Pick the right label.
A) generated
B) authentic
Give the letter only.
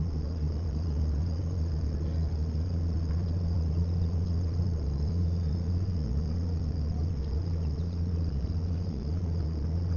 A